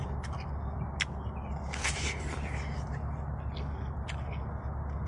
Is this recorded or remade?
recorded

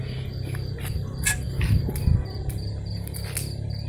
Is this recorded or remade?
recorded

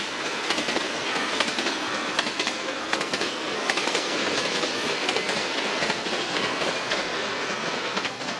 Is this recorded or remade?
remade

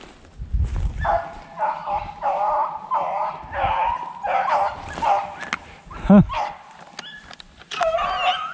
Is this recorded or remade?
recorded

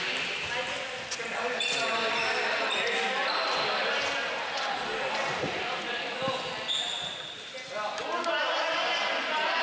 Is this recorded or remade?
recorded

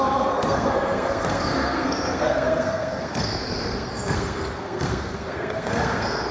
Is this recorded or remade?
remade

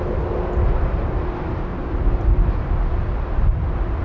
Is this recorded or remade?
recorded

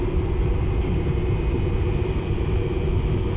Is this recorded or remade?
recorded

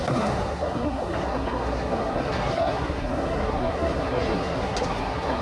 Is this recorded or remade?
remade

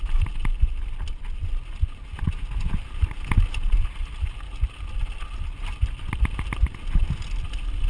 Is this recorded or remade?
recorded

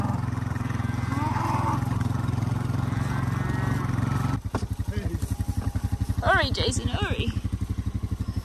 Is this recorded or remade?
recorded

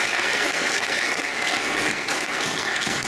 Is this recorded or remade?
remade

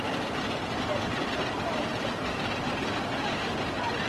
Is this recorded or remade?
recorded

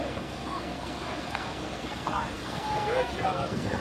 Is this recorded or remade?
remade